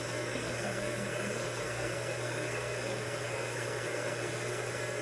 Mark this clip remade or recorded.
remade